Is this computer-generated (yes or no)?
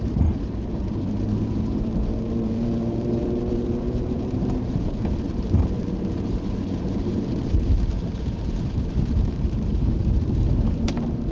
yes